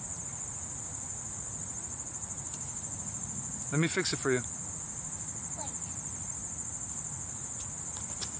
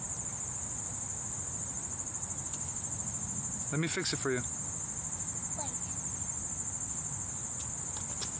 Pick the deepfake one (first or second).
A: first